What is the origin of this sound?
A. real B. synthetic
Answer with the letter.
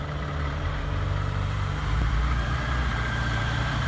B